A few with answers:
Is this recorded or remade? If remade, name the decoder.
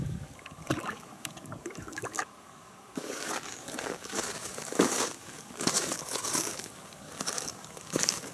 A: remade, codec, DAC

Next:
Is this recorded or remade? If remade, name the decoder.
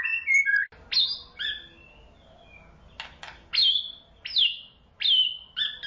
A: recorded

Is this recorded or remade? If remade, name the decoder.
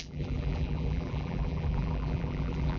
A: remade, vocoder, BigVGAN v2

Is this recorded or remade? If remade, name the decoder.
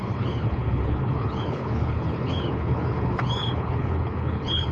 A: remade, codec, HILCodec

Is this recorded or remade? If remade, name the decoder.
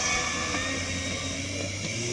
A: recorded